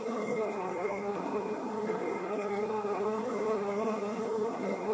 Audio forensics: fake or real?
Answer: fake